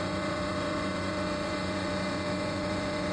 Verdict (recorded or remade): remade